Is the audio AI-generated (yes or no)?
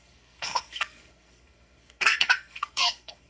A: yes